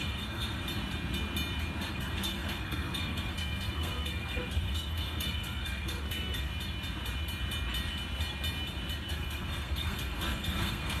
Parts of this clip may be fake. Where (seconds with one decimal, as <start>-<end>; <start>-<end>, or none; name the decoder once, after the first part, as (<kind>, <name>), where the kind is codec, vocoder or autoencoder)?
0.0-0.6 (codec, SNAC); 1.9-6.5; 9.1-11.0